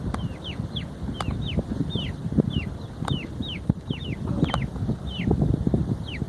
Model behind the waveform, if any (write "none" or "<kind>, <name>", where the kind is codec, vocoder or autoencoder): none